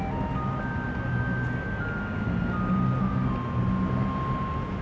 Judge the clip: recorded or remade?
recorded